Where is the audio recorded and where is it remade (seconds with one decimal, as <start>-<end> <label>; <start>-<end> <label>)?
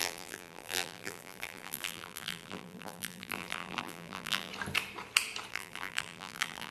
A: 0.0-4.5 remade; 4.5-5.5 recorded; 5.5-6.7 remade